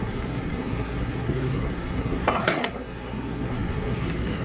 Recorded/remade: remade